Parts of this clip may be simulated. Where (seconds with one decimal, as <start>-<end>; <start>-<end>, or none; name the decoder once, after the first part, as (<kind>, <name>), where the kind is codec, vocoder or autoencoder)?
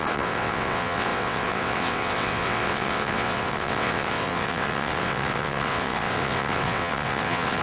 0.0-7.6 (vocoder, WaveNeXt)